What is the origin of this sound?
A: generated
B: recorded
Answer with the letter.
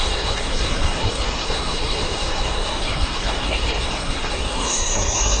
A